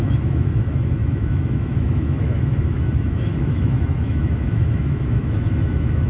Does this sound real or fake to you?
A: fake